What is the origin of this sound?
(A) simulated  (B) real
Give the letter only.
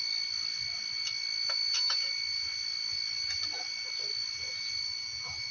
B